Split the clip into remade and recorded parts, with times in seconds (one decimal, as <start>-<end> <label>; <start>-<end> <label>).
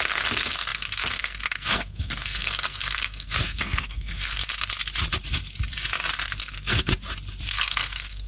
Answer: 0.0-4.4 remade; 4.4-6.4 recorded; 6.4-6.9 remade; 6.9-7.5 recorded; 7.5-8.3 remade